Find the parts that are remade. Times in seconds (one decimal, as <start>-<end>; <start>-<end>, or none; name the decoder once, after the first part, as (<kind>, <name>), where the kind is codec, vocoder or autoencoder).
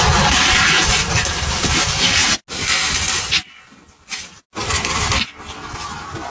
0.0-2.2 (vocoder, BigVGAN v2)